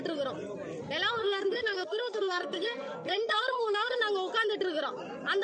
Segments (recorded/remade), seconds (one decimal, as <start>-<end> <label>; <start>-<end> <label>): 0.0-1.2 recorded; 1.2-4.0 remade; 4.0-5.4 recorded